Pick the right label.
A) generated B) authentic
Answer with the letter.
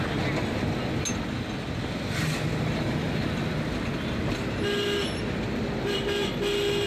B